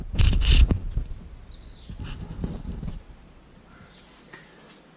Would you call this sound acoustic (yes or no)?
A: yes